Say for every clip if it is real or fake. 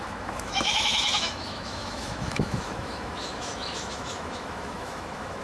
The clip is fake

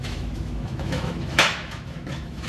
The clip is fake